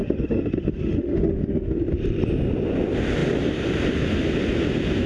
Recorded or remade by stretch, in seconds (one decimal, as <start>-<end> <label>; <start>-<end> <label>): 0.0-1.8 remade; 1.8-5.1 recorded